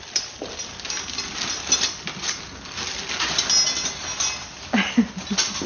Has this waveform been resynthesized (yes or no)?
no